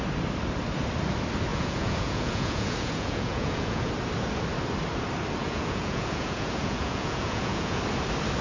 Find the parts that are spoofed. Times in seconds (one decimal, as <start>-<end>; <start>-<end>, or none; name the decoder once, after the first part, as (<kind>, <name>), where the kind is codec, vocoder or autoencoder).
1.5-3.9 (vocoder, Vocos); 5.4-7.8